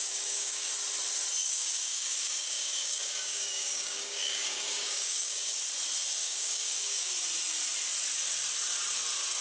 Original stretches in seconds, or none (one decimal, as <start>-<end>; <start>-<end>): 0.7-1.4; 5.6-6.2; 7.1-9.4

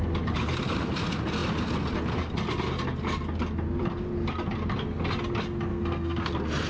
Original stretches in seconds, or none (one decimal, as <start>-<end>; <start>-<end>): 0.0-5.7; 6.3-6.7

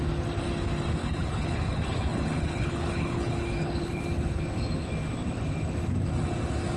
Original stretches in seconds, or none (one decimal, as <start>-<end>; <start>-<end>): 0.0-1.0; 4.0-6.8

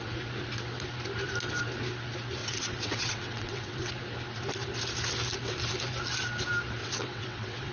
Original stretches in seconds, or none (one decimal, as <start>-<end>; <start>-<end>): 0.0-2.4; 3.9-6.8

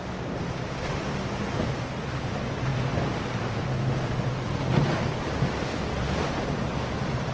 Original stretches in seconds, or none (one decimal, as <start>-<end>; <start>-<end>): 0.0-7.3

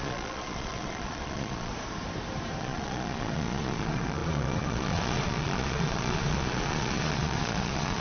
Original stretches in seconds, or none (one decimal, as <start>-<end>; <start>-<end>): 1.7-2.6

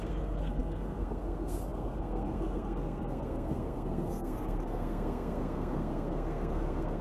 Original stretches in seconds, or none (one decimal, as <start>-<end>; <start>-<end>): none